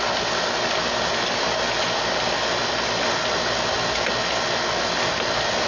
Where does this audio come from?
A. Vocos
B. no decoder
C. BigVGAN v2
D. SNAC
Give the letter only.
B